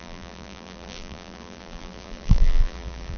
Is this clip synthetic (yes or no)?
yes